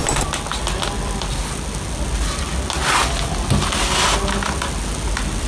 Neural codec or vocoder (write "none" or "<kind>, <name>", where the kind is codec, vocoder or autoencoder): none